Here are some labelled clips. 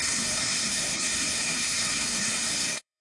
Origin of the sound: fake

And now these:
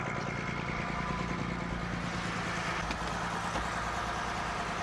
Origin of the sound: real